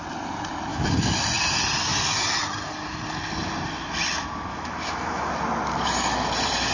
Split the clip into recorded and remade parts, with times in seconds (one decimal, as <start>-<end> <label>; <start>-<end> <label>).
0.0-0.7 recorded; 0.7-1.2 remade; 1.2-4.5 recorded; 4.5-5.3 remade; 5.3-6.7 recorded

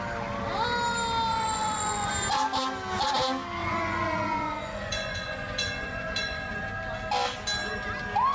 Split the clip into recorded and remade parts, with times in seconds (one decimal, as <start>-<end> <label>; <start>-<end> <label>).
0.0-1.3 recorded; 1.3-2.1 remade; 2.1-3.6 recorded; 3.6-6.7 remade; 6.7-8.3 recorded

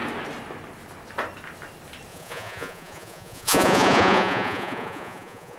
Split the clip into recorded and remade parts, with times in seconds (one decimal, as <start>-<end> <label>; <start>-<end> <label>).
0.0-2.1 recorded; 2.1-5.6 remade

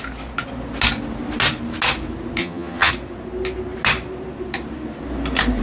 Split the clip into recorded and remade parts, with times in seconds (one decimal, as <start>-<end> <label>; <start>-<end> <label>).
0.0-2.4 recorded; 2.4-2.9 remade; 2.9-5.6 recorded

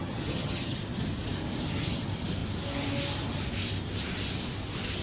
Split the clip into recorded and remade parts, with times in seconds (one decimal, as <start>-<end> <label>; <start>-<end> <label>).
0.0-0.8 remade; 0.8-5.0 recorded